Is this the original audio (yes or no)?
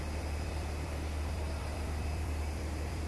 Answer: no